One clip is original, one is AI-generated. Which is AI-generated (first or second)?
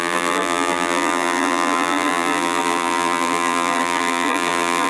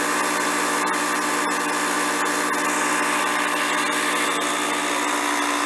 first